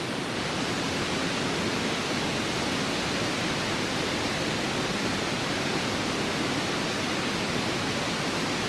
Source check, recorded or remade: remade